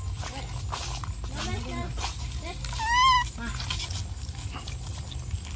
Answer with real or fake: real